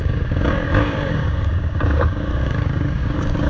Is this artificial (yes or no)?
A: yes